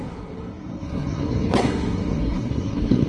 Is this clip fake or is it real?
fake